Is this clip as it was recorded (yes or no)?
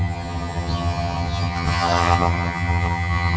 no